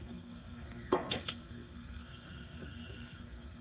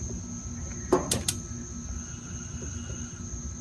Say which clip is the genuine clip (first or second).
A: second